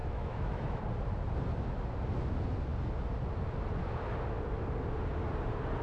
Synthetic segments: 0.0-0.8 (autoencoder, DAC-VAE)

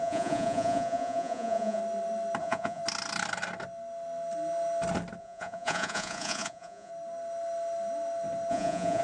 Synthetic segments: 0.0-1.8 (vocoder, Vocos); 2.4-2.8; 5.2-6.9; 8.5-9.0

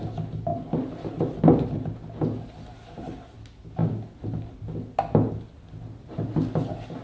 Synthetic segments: none

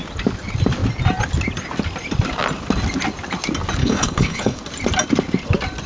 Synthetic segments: 3.8-4.6 (codec, HILCodec)

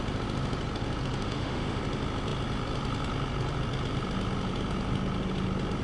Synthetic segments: 1.2-1.8 (autoencoder, DAC-VAE)

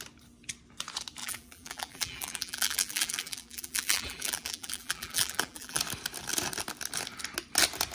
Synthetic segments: 1.2-5.8 (vocoder, BigVGAN v2)